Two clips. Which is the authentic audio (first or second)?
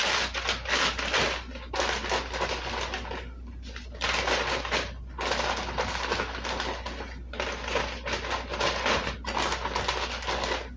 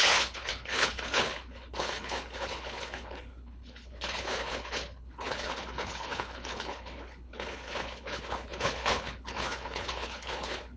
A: first